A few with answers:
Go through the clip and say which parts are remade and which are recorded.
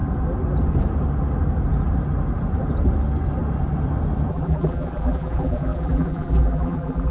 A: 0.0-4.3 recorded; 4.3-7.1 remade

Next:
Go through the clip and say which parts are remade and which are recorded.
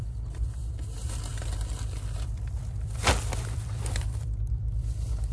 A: 0.0-5.3 recorded